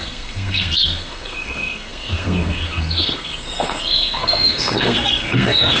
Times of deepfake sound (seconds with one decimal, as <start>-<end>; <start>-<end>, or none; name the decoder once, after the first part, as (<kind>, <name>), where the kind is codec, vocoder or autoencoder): 0.0-5.8 (codec, SNAC)